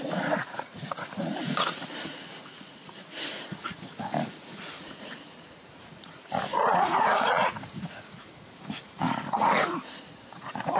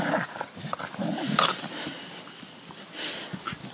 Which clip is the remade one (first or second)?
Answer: first